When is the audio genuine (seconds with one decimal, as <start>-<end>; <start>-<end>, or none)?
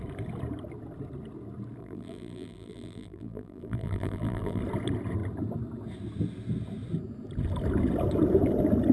0.0-1.8; 4.6-8.9